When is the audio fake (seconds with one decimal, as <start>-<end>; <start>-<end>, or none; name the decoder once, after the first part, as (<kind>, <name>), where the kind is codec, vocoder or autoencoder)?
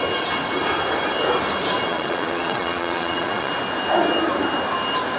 1.9-3.5 (vocoder, Vocos)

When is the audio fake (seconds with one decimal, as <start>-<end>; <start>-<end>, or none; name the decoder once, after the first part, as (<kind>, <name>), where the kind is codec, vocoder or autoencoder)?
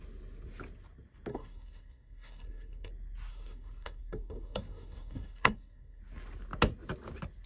1.3-2.9 (codec, SNAC); 3.3-6.0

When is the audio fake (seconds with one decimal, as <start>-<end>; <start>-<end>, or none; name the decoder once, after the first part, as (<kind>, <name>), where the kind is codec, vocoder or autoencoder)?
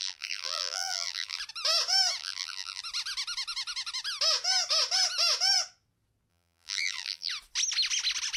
0.0-1.4 (vocoder, BigVGAN v2); 2.2-2.8; 6.3-7.3